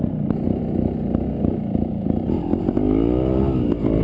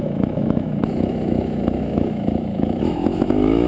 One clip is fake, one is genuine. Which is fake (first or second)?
second